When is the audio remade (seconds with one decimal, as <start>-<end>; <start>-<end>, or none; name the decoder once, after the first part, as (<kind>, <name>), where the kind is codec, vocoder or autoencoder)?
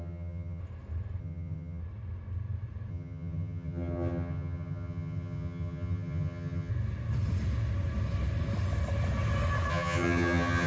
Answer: 0.0-0.6 (vocoder, HiFi-GAN); 1.2-1.8; 2.9-6.7; 9.7-10.7